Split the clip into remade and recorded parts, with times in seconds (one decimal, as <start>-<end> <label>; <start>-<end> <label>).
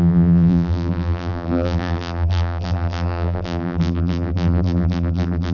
0.0-5.5 remade